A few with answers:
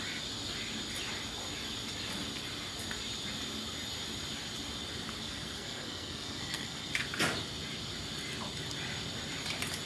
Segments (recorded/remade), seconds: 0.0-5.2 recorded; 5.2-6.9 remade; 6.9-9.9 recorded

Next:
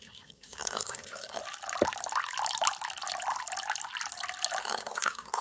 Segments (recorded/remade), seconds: 0.0-1.4 remade; 1.4-4.6 recorded; 4.6-5.4 remade

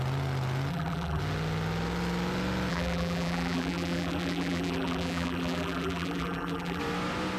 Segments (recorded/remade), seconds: 0.0-0.7 recorded; 0.7-1.2 remade; 1.2-2.7 recorded; 2.7-6.8 remade; 6.8-7.4 recorded

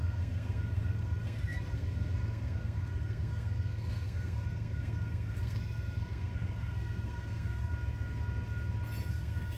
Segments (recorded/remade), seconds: 0.0-7.7 remade; 7.7-9.1 recorded; 9.1-9.6 remade